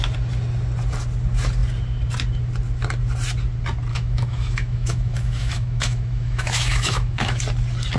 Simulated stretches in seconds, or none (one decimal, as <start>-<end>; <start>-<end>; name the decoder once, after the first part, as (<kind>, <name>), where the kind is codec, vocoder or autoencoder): 3.9-7.4 (autoencoder, DAC-VAE)